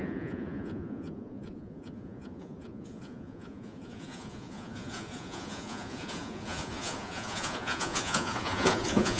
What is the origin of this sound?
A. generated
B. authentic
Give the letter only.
A